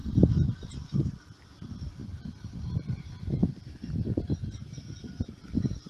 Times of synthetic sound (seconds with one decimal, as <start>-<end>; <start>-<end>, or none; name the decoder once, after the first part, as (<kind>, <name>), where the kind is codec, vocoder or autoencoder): 0.0-1.1 (vocoder, BigVGAN v2); 3.4-4.2